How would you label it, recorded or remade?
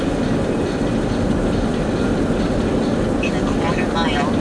recorded